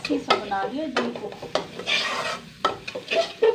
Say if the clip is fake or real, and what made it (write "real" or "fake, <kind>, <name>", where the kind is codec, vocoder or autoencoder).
real